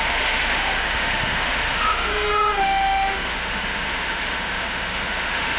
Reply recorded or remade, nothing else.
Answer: remade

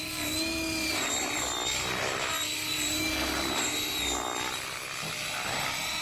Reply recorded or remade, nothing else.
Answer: recorded